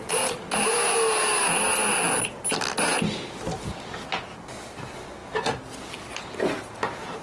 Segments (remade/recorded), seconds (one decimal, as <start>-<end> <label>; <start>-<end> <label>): 0.0-7.2 recorded